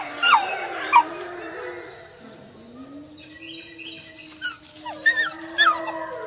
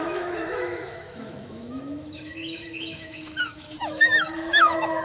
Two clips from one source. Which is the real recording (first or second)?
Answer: first